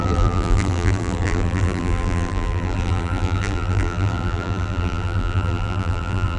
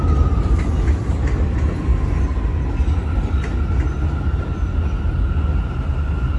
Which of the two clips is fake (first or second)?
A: first